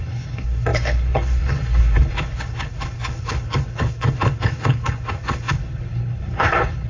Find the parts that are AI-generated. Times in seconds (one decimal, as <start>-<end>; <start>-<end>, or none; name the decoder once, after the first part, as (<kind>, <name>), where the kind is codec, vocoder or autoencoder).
0.0-6.9 (codec, HILCodec)